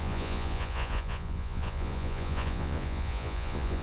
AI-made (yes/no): yes